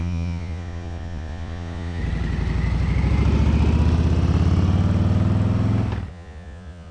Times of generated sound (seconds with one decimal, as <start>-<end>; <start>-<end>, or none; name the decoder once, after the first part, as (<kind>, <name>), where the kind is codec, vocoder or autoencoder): 0.0-2.0 (vocoder, Vocos); 6.1-6.9